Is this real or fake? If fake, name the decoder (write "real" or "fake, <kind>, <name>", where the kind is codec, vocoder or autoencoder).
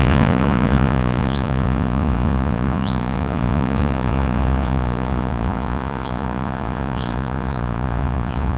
fake, vocoder, Vocos